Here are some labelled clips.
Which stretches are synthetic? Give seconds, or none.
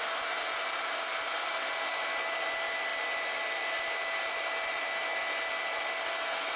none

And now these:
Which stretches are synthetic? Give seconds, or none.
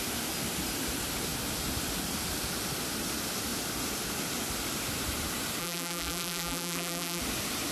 5.6-7.2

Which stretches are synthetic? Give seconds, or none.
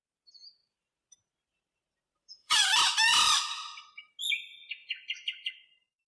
0.6-4.2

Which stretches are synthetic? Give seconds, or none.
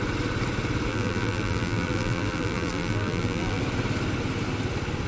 0.9-3.6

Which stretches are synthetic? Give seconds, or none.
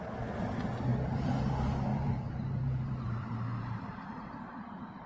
1.9-5.1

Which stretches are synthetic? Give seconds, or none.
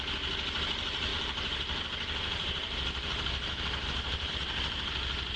1.1-4.3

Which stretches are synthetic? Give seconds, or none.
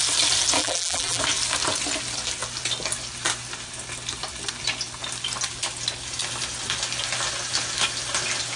0.6-1.2